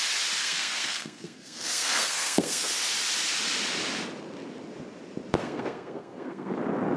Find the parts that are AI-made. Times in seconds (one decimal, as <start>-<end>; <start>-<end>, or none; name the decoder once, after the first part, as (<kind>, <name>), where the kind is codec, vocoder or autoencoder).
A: 0.4-2.7 (codec, SNAC); 5.4-6.5